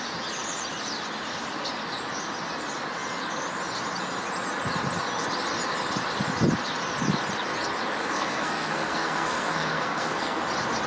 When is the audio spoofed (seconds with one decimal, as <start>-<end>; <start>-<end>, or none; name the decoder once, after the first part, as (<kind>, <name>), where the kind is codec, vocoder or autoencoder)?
8.0-10.4 (codec, SNAC)